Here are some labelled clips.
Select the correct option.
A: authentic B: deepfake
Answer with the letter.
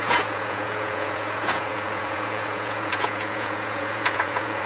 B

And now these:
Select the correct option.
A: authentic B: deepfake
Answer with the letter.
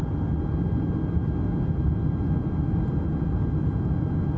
A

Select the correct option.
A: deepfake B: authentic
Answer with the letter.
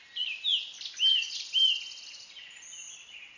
B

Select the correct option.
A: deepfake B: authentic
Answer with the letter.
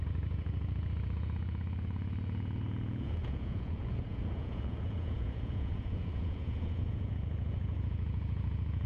A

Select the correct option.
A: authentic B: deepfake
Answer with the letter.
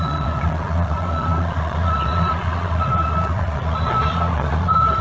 B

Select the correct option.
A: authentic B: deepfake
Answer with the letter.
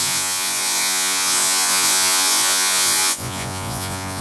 B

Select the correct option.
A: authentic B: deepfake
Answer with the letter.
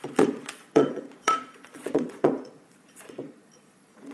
B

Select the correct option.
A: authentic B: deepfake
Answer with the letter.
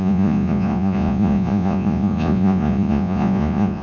B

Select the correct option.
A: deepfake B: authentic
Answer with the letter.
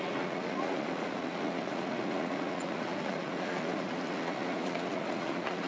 A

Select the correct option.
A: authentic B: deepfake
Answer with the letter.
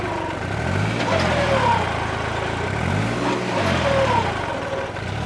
A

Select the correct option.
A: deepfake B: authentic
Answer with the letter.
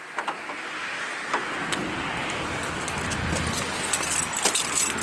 B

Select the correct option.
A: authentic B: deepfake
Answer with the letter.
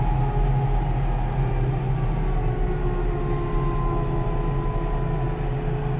A